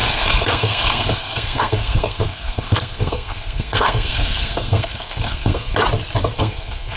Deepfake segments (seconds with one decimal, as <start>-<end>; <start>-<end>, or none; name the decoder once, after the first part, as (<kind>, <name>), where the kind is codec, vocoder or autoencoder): 0.0-5.7 (codec, SNAC); 6.4-7.0